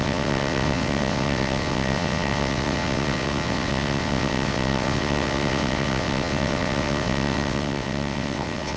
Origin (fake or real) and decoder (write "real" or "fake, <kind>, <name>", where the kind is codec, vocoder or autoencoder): fake, vocoder, WaveNeXt